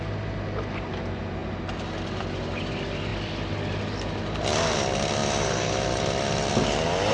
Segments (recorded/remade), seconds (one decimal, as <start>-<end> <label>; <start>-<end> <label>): 0.0-7.1 recorded